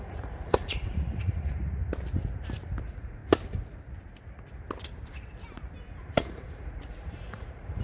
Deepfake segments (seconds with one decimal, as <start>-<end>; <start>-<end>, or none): 0.0-1.8; 2.8-3.2; 6.0-7.8